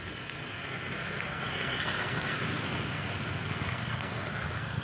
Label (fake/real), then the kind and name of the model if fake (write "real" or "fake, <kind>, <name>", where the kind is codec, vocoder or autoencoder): fake, codec, SNAC